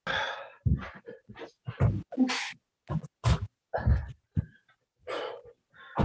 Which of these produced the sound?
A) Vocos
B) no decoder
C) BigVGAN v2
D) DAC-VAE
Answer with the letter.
B